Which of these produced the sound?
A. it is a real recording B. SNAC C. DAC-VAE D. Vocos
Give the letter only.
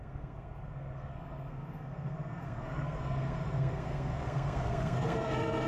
B